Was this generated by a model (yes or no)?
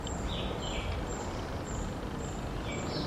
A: no